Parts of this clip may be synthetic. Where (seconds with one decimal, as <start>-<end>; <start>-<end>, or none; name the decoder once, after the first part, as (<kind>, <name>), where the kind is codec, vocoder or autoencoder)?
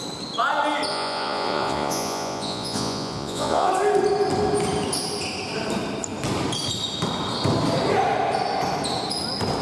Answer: 0.9-3.7 (vocoder, Vocos)